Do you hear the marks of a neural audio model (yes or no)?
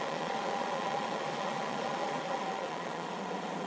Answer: yes